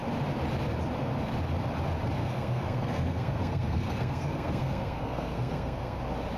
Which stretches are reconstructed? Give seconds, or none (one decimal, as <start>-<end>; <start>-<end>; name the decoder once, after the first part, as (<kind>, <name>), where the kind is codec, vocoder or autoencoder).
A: 2.2-6.0 (codec, SNAC)